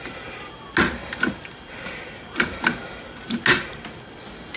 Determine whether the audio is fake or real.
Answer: real